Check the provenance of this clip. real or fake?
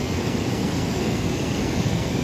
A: fake